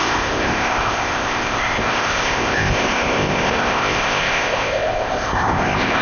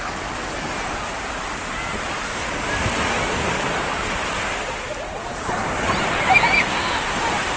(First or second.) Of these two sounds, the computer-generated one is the first